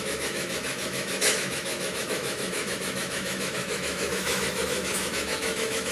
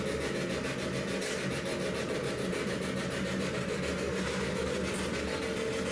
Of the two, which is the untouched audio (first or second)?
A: second